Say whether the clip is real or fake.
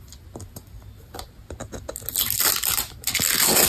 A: real